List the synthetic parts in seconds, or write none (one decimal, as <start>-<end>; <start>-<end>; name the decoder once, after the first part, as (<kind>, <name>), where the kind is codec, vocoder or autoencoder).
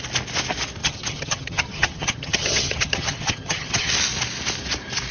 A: 0.8-3.9 (vocoder, HiFi-GAN)